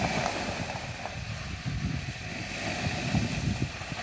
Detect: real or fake fake